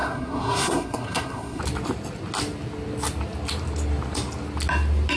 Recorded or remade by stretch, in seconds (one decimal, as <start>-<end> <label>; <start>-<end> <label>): 0.0-1.6 remade; 1.6-5.2 recorded